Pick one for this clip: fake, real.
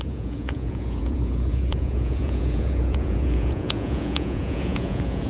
fake